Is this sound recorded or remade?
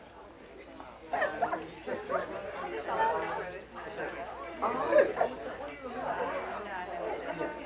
recorded